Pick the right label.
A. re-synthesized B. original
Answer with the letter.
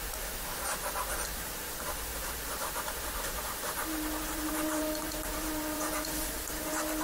A